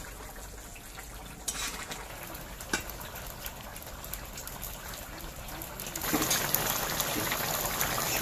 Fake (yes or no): no